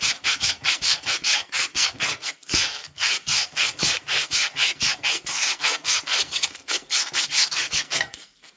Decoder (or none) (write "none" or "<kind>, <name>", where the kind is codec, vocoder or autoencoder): codec, SNAC